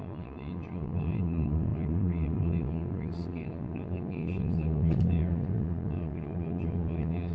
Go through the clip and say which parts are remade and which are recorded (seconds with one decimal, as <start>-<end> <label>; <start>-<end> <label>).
0.0-7.3 remade